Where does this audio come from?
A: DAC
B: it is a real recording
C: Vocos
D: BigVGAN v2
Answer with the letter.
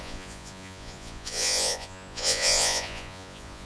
C